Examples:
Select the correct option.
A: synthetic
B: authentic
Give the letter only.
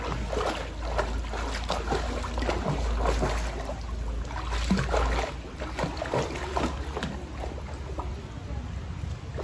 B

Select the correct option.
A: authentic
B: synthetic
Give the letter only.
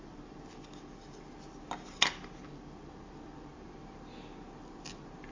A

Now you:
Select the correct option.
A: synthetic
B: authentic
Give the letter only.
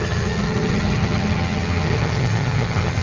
A